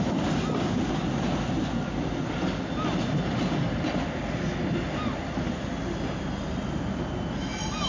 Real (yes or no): yes